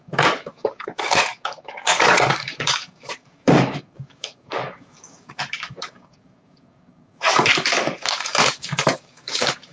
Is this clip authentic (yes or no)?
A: no